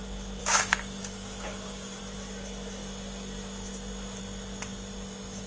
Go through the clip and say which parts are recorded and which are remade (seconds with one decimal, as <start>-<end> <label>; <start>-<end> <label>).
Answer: 0.0-0.4 recorded; 0.4-2.0 remade; 2.0-5.5 recorded